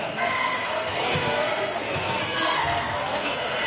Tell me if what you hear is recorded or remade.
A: remade